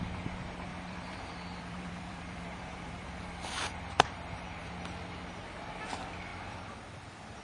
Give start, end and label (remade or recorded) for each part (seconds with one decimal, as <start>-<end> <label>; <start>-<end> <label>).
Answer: 0.0-0.7 recorded; 0.7-4.7 remade; 4.7-6.3 recorded; 6.3-7.4 remade